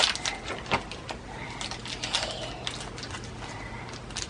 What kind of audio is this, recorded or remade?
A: recorded